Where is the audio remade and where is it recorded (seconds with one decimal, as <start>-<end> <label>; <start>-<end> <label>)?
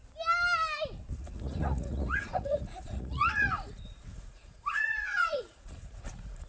0.0-1.1 recorded; 1.1-6.5 remade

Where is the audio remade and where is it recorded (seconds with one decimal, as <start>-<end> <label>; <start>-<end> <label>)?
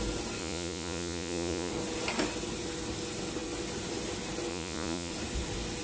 0.0-0.4 recorded; 0.4-1.7 remade; 1.7-4.5 recorded; 4.5-5.1 remade; 5.1-5.8 recorded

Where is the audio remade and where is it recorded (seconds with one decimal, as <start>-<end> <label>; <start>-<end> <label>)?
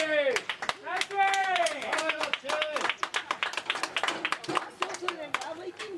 0.0-1.4 recorded; 1.4-2.2 remade; 2.2-6.0 recorded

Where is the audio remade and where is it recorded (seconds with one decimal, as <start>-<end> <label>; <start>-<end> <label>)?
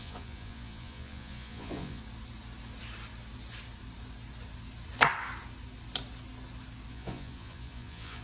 0.0-2.0 remade; 2.0-6.9 recorded; 6.9-8.2 remade